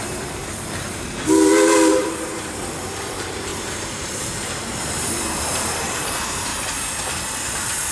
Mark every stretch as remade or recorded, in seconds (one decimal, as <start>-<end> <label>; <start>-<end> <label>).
0.0-0.4 remade; 0.4-2.0 recorded; 2.0-6.5 remade; 6.5-7.9 recorded